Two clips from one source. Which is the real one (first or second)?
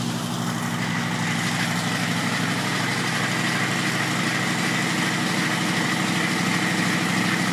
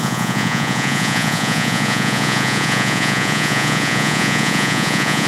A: first